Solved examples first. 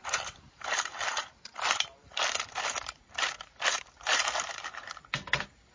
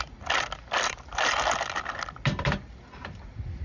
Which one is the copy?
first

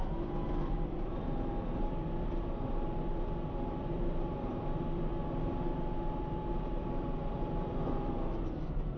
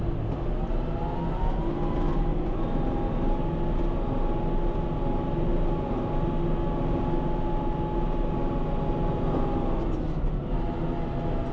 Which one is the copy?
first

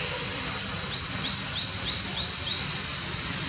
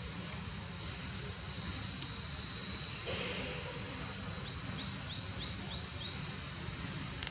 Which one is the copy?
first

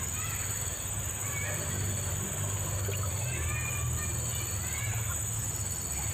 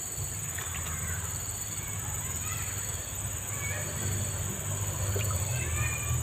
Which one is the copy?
second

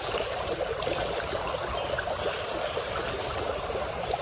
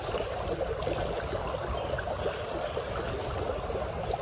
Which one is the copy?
first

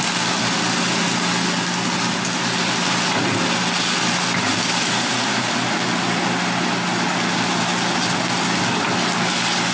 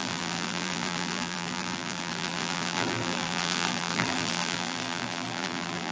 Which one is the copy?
second